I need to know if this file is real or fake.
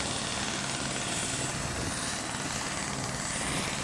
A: real